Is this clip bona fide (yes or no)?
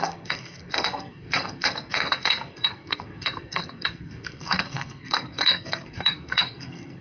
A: no